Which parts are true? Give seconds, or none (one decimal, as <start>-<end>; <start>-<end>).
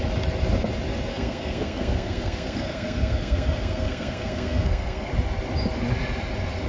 0.0-1.1; 5.1-6.7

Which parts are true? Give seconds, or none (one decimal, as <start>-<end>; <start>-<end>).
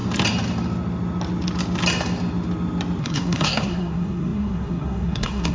0.0-3.0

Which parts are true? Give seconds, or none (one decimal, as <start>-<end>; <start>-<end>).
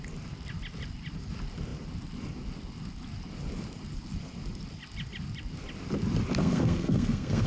0.0-6.4